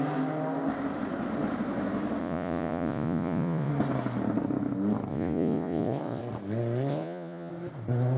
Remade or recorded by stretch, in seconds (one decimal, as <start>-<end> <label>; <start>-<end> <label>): 0.0-2.2 recorded; 2.2-3.7 remade; 3.7-5.1 recorded; 5.1-6.2 remade; 6.2-6.9 recorded; 6.9-7.5 remade; 7.5-8.2 recorded